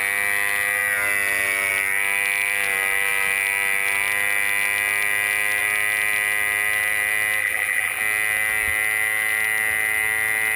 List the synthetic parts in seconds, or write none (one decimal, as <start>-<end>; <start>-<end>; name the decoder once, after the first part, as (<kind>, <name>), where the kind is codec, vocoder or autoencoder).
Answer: 7.4-8.0 (vocoder, BigVGAN v2)